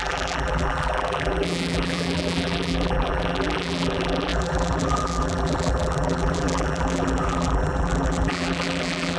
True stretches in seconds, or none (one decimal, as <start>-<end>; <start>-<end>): none